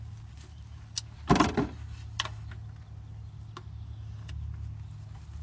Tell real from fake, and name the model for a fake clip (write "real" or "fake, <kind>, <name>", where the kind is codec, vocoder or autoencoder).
real